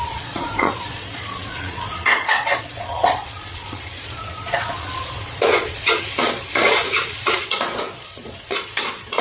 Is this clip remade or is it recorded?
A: remade